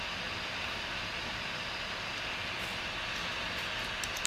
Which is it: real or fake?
real